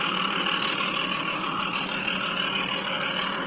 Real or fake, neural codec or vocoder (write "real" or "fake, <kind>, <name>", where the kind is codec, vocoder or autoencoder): real